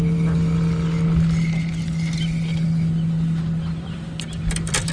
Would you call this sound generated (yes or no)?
no